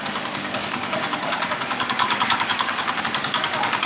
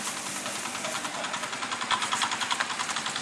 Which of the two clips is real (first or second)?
second